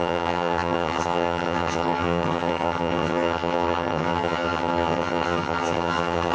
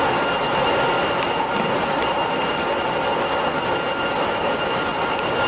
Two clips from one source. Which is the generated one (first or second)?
first